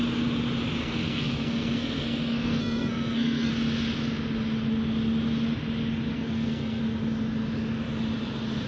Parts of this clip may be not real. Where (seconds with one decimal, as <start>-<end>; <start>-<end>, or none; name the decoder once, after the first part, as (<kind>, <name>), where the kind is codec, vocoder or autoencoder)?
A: 0.8-3.5 (codec, SNAC); 6.1-6.8